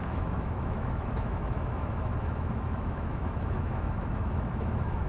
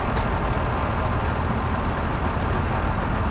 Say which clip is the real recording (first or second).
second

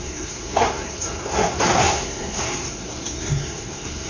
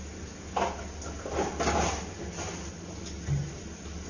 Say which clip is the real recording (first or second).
second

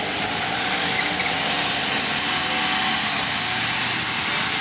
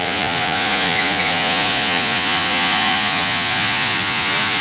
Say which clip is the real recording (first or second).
first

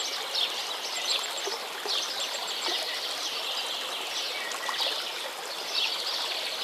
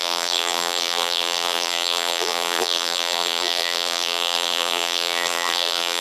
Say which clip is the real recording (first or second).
first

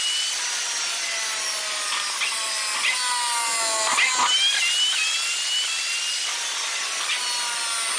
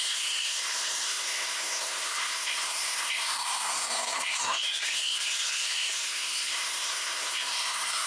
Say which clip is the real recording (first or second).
first